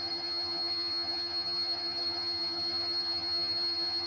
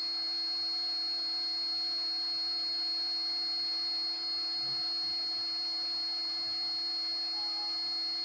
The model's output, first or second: first